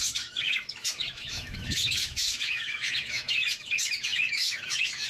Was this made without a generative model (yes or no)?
no